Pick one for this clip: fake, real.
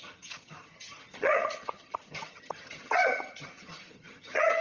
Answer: fake